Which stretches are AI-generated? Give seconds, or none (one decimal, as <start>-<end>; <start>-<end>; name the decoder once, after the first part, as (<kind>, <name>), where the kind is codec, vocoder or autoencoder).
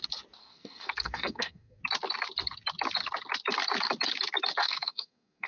0.4-1.8 (codec, SNAC); 4.6-5.5